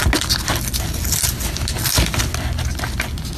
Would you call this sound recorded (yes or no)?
yes